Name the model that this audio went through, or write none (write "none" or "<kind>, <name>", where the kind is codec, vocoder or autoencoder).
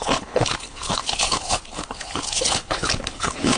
codec, HILCodec